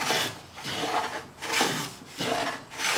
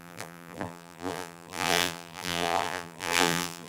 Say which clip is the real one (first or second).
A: first